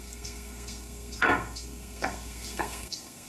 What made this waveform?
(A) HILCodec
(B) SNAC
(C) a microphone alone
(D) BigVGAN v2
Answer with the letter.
B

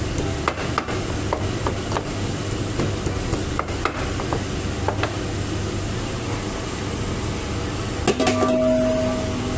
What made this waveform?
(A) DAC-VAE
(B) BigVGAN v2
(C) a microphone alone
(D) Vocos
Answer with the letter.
C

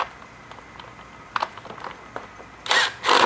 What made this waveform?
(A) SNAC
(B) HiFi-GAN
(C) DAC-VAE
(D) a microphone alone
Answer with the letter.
D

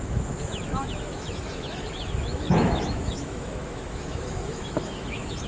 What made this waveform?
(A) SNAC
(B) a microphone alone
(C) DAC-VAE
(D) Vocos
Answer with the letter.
C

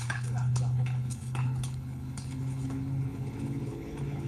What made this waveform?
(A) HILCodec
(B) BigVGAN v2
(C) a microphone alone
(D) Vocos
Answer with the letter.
A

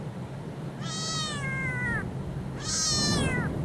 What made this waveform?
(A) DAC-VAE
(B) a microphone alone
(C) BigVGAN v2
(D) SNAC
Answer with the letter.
B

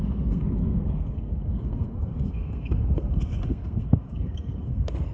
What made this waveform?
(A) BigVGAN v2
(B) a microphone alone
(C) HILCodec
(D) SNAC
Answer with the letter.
D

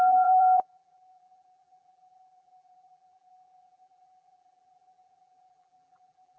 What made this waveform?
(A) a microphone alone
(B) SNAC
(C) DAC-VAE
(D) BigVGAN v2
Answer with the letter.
D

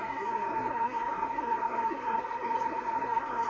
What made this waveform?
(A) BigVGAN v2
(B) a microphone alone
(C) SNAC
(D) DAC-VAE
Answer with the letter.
C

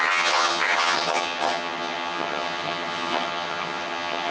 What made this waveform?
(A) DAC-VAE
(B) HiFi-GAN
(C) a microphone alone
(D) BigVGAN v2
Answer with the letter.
B